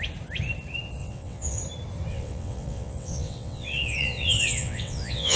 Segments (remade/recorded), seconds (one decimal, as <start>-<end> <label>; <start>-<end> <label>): 0.0-1.0 recorded; 1.0-1.6 remade; 1.6-2.1 recorded; 2.1-5.4 remade